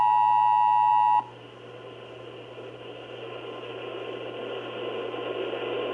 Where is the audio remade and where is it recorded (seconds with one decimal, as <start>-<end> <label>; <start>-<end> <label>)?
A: 0.0-5.9 recorded